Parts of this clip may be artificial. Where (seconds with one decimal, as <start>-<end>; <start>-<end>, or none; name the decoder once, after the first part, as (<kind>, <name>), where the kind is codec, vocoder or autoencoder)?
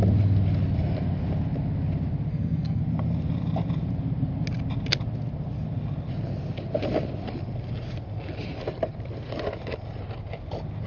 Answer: 2.3-2.8 (codec, SNAC)